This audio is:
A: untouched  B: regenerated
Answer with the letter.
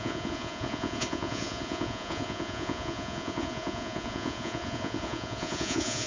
B